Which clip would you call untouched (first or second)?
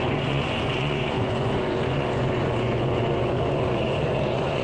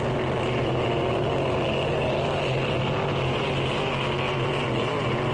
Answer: second